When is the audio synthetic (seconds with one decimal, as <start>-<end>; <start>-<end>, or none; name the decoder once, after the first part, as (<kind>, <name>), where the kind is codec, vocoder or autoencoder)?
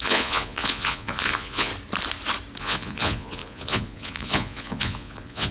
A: 0.0-1.7 (vocoder, Vocos); 2.6-5.5